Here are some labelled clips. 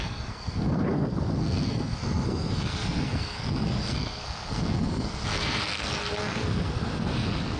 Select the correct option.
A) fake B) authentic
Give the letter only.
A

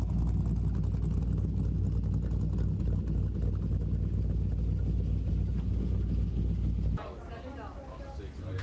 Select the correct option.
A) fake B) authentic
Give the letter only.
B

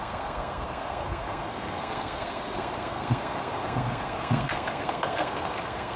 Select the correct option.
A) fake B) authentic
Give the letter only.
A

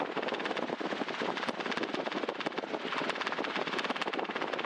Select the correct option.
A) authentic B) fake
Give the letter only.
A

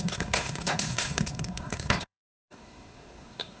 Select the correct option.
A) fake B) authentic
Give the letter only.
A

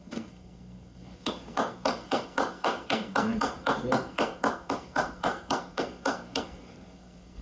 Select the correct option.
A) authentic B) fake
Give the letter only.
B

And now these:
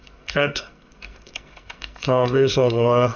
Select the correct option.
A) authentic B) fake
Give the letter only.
B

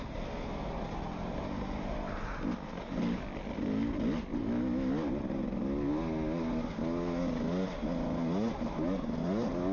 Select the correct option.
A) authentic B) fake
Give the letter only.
A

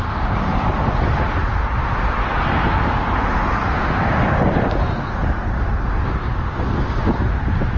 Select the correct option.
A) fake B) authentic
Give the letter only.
B